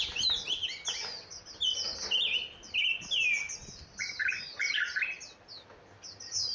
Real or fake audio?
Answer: real